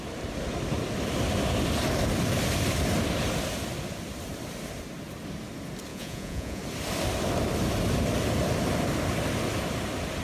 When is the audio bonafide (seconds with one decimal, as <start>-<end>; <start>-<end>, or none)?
0.0-5.9; 6.6-10.2